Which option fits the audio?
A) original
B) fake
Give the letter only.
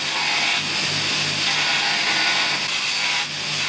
A